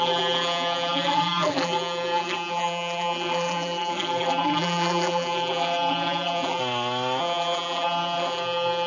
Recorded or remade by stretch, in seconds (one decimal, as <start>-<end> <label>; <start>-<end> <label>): 0.0-6.6 remade; 6.6-7.2 recorded; 7.2-8.9 remade